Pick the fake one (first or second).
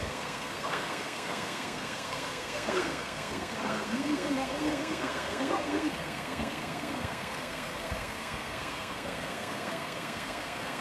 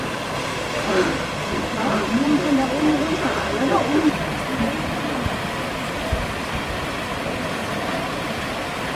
first